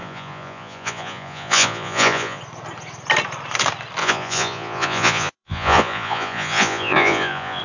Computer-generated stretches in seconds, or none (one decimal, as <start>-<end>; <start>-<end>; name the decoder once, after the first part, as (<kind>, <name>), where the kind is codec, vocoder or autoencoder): 0.0-2.4 (vocoder, Vocos); 4.0-7.6